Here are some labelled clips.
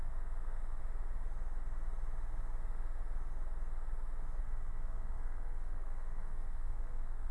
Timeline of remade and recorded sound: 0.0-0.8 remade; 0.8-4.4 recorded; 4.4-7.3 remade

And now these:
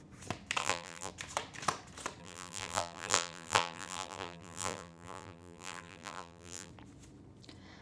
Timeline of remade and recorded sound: 0.0-0.6 recorded; 0.6-1.1 remade; 1.1-2.2 recorded; 2.2-6.7 remade; 6.7-7.8 recorded

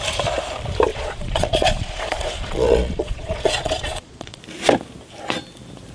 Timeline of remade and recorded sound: 0.0-0.9 recorded; 0.9-4.4 remade; 4.4-5.9 recorded

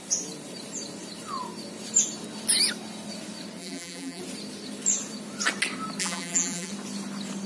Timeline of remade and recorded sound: 0.0-3.6 recorded; 3.6-4.2 remade; 4.2-6.0 recorded; 6.0-6.7 remade; 6.7-7.5 recorded